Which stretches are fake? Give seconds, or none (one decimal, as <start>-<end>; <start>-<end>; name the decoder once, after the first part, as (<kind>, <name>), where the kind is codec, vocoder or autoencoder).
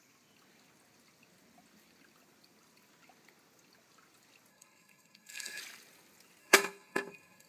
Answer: 4.5-5.6 (codec, SNAC); 6.4-7.5